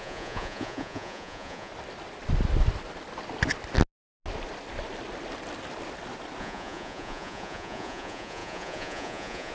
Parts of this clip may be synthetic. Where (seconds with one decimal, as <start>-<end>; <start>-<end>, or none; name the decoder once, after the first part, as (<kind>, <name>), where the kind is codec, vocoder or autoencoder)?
0.0-1.7 (vocoder, Vocos); 6.4-9.5